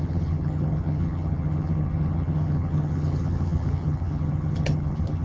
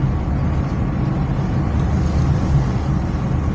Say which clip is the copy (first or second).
first